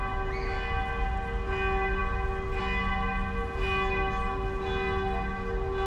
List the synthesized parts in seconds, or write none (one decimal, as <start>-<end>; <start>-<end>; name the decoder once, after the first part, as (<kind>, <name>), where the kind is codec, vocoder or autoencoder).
none